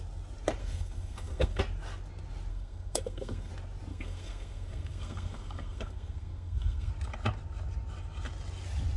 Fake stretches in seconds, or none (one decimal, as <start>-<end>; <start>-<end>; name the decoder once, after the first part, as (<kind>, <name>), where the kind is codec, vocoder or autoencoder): 0.6-1.6 (codec, SNAC); 2.5-3.5; 3.9-6.9